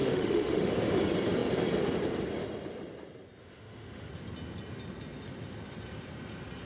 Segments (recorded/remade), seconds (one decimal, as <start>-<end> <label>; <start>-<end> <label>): 0.0-0.7 remade; 0.7-3.4 recorded; 3.4-4.1 remade; 4.1-6.7 recorded